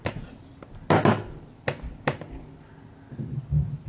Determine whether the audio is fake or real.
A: real